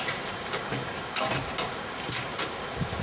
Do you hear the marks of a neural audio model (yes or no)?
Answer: yes